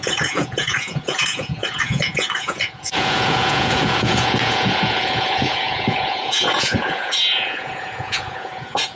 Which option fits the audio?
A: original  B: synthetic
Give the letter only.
B